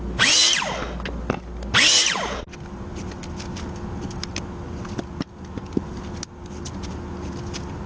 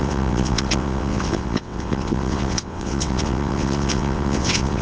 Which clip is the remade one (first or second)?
second